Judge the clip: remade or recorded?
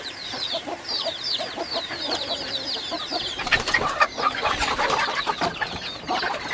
remade